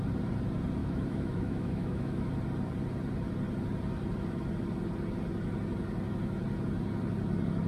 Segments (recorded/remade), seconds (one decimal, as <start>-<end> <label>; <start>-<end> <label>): 0.0-0.8 recorded; 0.8-2.3 remade; 2.3-7.7 recorded